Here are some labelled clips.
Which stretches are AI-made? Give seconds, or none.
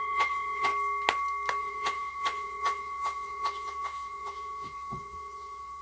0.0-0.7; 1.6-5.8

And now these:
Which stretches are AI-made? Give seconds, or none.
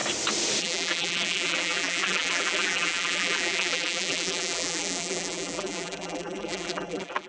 0.6-7.3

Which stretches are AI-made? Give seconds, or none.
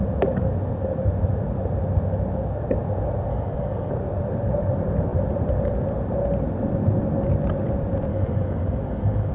3.3-3.9; 8.1-9.3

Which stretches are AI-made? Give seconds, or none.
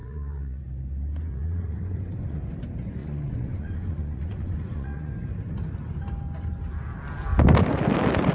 0.0-0.6; 1.3-2.4; 3.0-5.1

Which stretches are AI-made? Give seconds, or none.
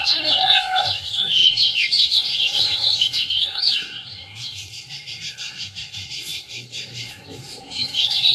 0.0-8.3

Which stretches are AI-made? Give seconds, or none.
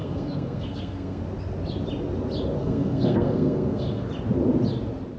0.0-1.2; 2.6-4.1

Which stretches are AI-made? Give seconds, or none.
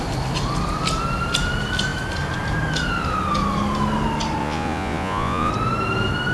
4.4-5.5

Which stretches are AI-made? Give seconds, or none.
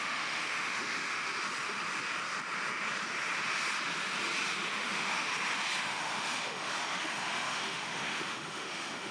0.0-1.3; 4.7-5.3; 5.8-9.1